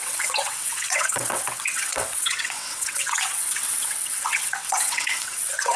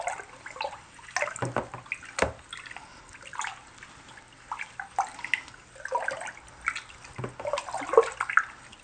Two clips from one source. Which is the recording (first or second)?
second